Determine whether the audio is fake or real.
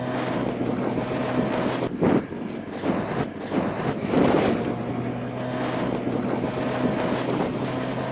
real